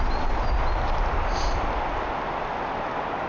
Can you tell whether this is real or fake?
real